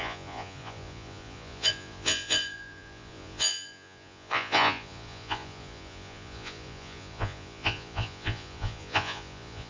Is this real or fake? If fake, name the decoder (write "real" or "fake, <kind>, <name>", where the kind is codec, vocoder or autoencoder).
fake, vocoder, Vocos